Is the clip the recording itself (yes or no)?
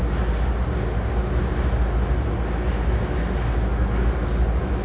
yes